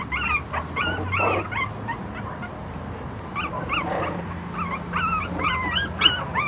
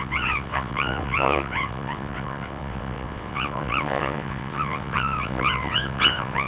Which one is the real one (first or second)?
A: first